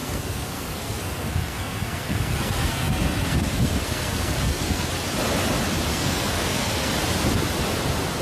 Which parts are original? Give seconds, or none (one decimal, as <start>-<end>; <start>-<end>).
4.9-5.9; 6.9-8.2